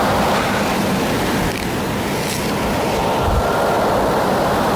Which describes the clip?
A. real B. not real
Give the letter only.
B